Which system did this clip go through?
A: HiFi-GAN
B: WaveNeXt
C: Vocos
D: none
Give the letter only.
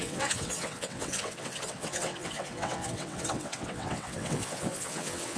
B